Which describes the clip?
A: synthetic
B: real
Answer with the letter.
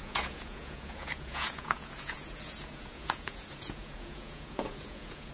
A